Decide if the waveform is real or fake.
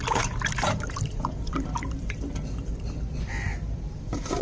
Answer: fake